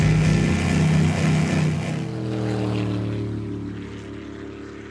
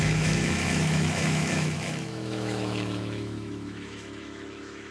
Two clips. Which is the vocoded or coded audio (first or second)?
second